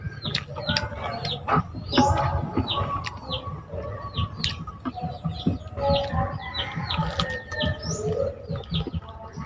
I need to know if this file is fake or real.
real